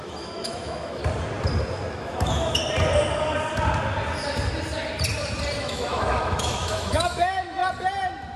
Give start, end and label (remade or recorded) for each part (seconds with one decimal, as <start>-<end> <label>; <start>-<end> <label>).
0.0-1.0 remade; 1.0-1.9 recorded; 1.9-2.6 remade; 2.6-5.6 recorded; 5.6-7.6 remade; 7.6-8.4 recorded